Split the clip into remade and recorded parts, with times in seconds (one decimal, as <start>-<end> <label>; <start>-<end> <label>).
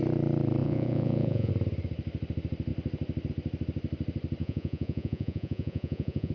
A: 0.0-0.6 recorded; 0.6-1.5 remade; 1.5-4.4 recorded; 4.4-6.3 remade